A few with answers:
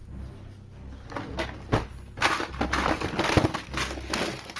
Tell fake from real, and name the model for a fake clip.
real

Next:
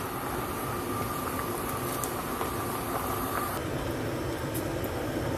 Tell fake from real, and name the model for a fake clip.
real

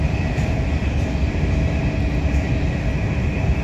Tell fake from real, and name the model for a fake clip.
real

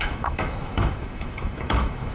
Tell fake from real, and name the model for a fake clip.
fake, autoencoder, DAC-VAE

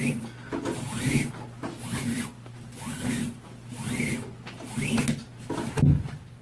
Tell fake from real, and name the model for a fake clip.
real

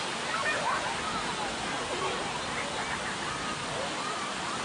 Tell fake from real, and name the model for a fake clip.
real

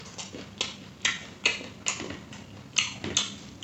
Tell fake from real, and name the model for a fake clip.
real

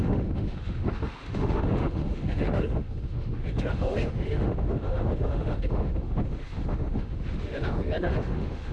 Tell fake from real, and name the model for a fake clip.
fake, autoencoder, DAC-VAE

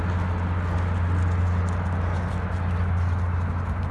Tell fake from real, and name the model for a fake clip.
real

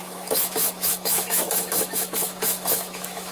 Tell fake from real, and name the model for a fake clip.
fake, autoencoder, DAC-VAE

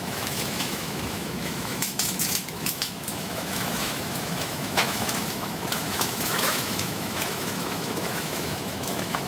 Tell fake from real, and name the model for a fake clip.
fake, autoencoder, DAC-VAE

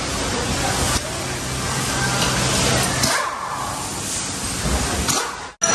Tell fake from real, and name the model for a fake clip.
real